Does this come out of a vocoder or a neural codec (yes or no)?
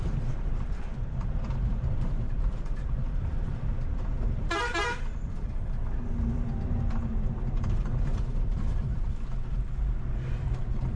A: yes